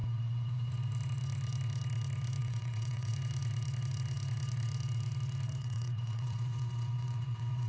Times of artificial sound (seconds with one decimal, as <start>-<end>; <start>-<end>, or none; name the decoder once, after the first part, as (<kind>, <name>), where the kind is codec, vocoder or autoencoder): 0.0-0.7 (vocoder, WaveNeXt); 2.4-3.1; 5.6-7.7